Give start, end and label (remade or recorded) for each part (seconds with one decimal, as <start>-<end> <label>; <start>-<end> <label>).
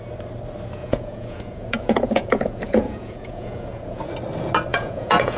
0.0-0.8 recorded; 0.8-4.0 remade; 4.0-4.7 recorded; 4.7-5.4 remade